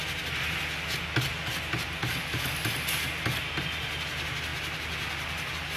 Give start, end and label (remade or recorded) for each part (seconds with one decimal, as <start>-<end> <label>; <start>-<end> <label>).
0.0-5.8 recorded